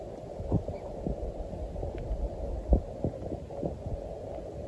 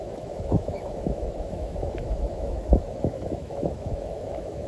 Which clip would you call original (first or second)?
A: first